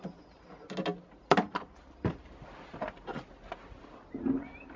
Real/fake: real